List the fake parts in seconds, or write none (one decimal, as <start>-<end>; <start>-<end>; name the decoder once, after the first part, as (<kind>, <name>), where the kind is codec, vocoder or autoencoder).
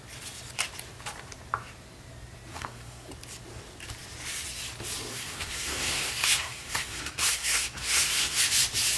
2.5-3.1 (codec, SNAC); 5.1-8.4